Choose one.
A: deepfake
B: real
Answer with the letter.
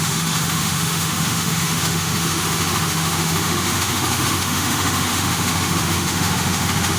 A